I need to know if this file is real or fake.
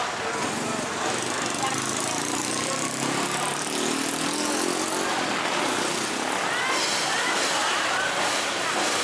real